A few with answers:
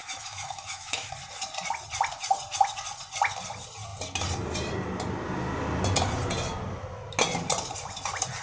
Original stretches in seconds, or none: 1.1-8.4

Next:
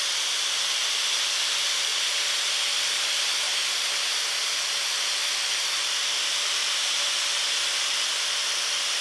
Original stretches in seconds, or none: 1.9-3.2; 6.6-7.4